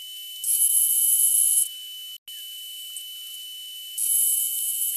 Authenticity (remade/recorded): recorded